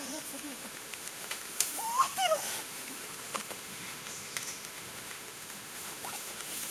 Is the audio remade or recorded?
remade